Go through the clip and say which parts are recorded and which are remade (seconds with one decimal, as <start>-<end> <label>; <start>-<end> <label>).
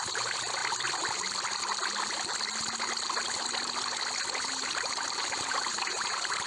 0.0-0.6 remade; 0.6-4.5 recorded; 4.5-6.5 remade